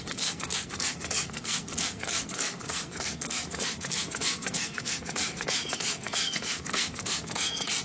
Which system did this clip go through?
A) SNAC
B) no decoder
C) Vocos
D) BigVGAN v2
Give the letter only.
A